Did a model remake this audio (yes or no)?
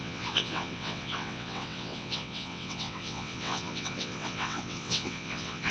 yes